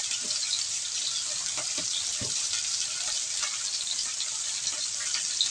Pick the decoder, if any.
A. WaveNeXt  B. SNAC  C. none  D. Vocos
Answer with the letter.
C